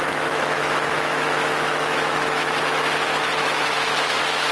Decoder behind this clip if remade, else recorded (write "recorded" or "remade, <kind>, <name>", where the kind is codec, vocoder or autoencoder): remade, autoencoder, DAC-VAE